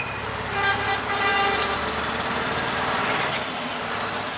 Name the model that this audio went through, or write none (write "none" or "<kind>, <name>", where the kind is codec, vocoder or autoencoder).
none